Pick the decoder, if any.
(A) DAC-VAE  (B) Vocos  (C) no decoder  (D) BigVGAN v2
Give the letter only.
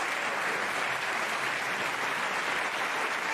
C